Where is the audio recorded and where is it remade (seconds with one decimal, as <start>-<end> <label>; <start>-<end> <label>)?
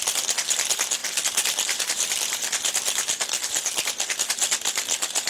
0.0-1.0 recorded; 1.0-4.2 remade; 4.2-5.3 recorded